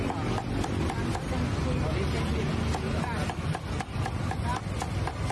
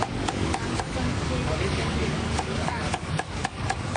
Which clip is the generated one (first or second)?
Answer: second